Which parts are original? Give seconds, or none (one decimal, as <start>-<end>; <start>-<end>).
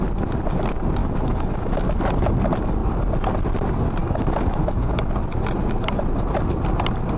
0.0-1.0; 1.8-4.0; 5.1-7.2